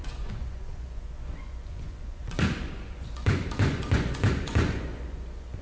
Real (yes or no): no